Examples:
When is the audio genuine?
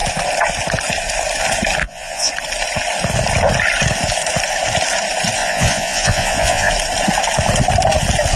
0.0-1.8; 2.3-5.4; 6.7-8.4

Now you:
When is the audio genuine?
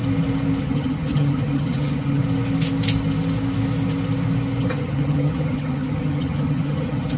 0.0-0.6; 2.2-4.7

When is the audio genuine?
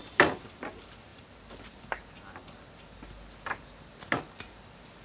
0.0-5.0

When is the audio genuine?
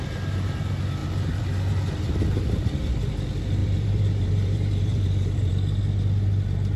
0.0-3.6; 5.5-6.8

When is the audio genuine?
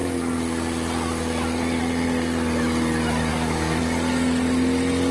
0.0-3.3; 3.8-5.1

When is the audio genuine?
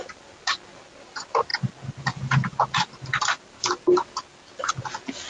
0.0-5.3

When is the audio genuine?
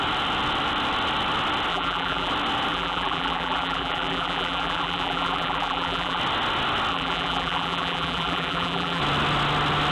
0.0-1.7; 2.3-2.7; 6.2-6.9; 9.0-9.9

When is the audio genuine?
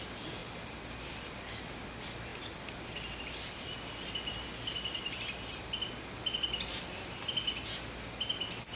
0.0-8.8